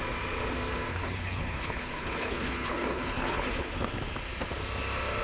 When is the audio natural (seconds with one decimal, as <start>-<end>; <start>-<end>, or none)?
0.0-0.9; 3.9-5.2